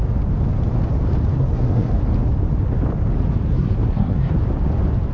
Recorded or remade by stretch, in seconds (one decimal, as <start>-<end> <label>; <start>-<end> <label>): 0.0-1.4 recorded; 1.4-1.9 remade; 1.9-3.5 recorded; 3.5-4.3 remade; 4.3-5.1 recorded